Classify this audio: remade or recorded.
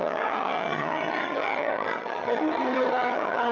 remade